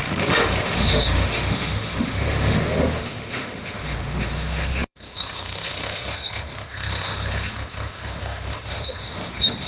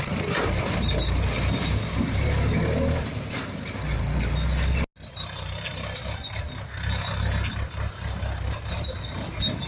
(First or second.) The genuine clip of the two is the second